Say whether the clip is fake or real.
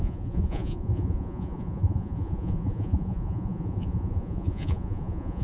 fake